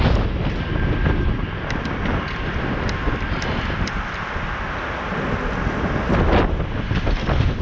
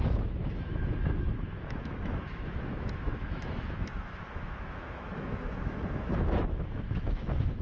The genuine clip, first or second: first